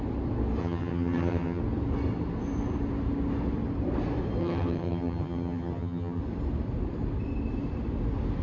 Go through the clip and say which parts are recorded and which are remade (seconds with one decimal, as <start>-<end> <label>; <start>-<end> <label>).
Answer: 0.0-0.6 recorded; 0.6-1.6 remade; 1.6-4.4 recorded; 4.4-6.2 remade; 6.2-8.4 recorded